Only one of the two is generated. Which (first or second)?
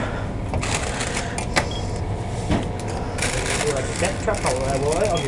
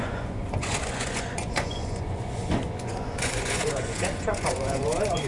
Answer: second